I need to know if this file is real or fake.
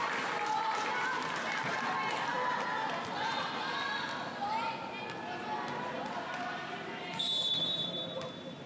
real